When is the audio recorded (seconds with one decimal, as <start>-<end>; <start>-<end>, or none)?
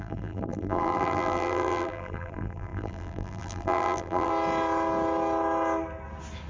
4.3-6.5